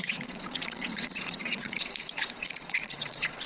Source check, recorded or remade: remade